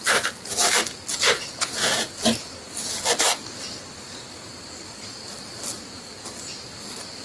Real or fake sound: real